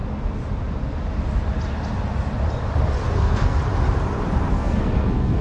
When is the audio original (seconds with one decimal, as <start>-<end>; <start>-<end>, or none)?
0.0-3.2; 3.6-4.5